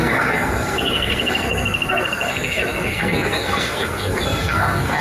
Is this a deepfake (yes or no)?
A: yes